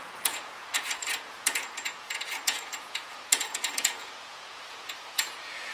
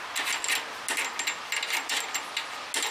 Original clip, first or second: second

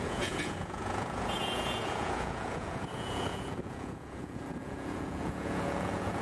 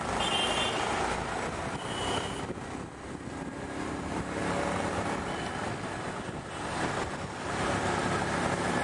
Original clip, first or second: second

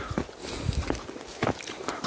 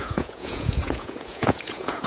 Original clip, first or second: first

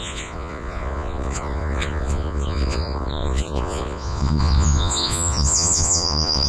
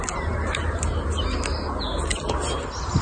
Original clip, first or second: second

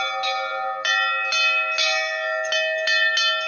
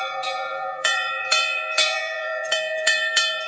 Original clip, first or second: first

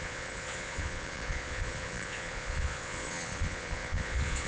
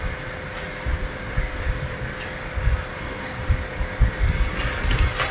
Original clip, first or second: second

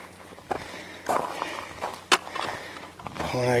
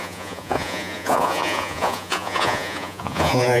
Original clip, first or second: first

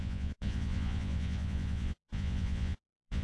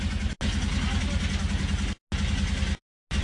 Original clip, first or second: second